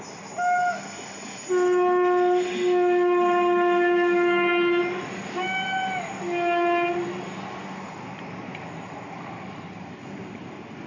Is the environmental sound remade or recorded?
recorded